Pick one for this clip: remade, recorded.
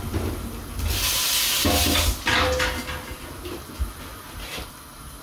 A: recorded